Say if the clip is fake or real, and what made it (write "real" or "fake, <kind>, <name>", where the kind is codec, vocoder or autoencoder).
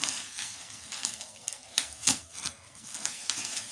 fake, codec, SNAC